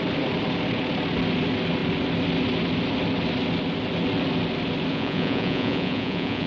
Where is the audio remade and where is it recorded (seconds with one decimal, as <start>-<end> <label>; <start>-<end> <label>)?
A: 0.0-4.9 recorded; 4.9-6.5 remade